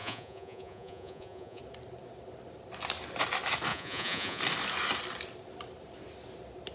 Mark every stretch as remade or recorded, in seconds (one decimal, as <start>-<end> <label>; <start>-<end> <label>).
0.0-1.6 remade; 1.6-3.7 recorded; 3.7-4.4 remade; 4.4-6.7 recorded

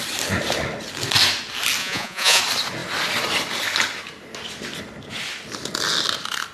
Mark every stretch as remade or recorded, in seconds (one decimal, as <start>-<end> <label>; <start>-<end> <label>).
0.0-1.8 recorded; 1.8-2.4 remade; 2.4-6.5 recorded

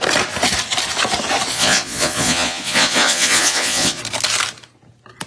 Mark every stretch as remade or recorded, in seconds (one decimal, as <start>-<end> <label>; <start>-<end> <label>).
0.0-1.5 recorded; 1.5-4.0 remade; 4.0-5.3 recorded

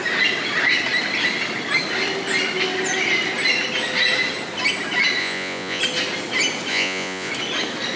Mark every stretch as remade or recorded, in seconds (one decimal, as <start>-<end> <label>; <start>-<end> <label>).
0.0-5.2 recorded; 5.2-5.8 remade; 5.8-6.7 recorded; 6.7-7.3 remade; 7.3-8.0 recorded

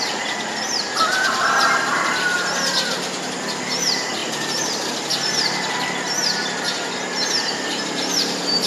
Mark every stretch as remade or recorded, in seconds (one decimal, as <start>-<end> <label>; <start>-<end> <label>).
0.0-8.7 recorded

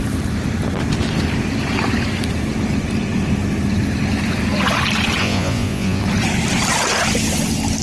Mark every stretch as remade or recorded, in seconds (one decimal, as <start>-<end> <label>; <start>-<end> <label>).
0.0-5.2 recorded; 5.2-6.0 remade; 6.0-7.8 recorded

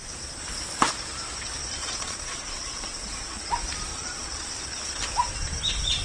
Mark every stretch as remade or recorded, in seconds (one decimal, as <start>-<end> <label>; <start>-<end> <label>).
0.0-1.8 recorded; 1.8-3.4 remade; 3.4-3.9 recorded; 3.9-4.5 remade; 4.5-6.0 recorded